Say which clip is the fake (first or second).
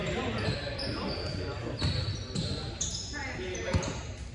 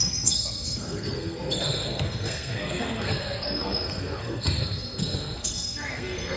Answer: second